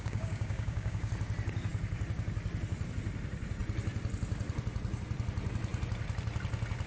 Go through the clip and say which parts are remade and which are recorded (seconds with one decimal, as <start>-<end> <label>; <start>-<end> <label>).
0.0-1.1 remade; 1.1-6.9 recorded